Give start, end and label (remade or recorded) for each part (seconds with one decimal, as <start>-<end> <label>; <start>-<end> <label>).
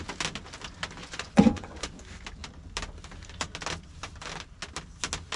0.0-1.0 recorded; 1.0-1.9 remade; 1.9-5.4 recorded